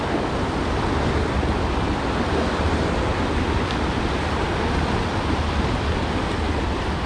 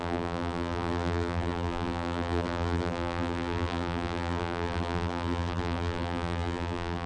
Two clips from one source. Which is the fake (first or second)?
second